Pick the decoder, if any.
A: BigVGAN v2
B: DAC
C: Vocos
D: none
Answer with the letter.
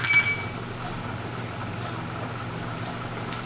D